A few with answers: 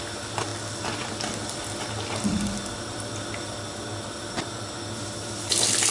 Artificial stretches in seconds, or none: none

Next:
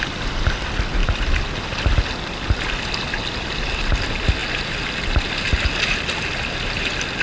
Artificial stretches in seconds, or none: none